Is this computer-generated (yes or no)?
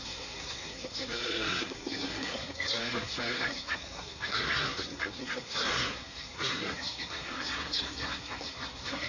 yes